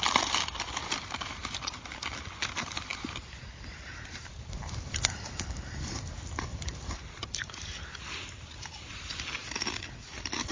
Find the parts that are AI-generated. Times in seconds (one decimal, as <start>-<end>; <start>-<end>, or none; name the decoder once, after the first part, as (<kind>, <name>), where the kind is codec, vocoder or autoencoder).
2.9-7.7 (vocoder, BigVGAN v2)